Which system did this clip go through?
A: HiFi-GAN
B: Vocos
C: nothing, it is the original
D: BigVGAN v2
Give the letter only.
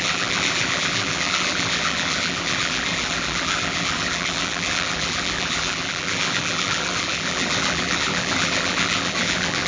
D